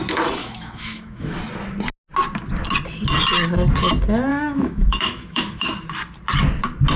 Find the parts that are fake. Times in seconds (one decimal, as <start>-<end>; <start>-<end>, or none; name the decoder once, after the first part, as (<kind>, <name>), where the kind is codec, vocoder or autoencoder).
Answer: 0.4-1.4 (autoencoder, DAC-VAE); 4.3-5.7